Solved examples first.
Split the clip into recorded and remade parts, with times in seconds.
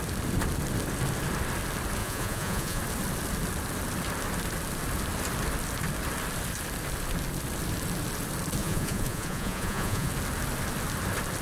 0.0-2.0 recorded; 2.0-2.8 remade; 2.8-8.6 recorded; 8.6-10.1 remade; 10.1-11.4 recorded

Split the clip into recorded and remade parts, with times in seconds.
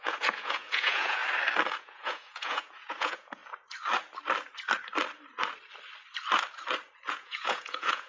0.0-1.2 remade; 1.2-1.7 recorded; 1.7-3.4 remade; 3.4-7.1 recorded; 7.1-8.1 remade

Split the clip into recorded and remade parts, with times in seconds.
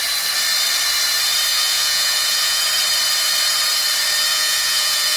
0.0-1.5 recorded; 1.5-2.6 remade; 2.6-4.3 recorded; 4.3-5.2 remade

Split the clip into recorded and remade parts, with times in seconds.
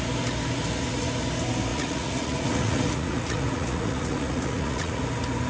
0.0-1.7 recorded; 1.7-5.0 remade; 5.0-5.5 recorded